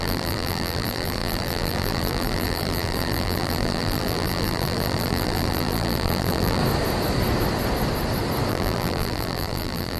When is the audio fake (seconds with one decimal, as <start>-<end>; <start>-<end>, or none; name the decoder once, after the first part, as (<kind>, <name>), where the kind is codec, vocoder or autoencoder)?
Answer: 0.0-6.6 (vocoder, BigVGAN v2); 8.5-10.0